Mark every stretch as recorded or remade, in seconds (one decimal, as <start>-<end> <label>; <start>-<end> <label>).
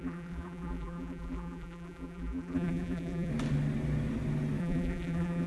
0.0-3.3 remade; 3.3-4.6 recorded; 4.6-5.5 remade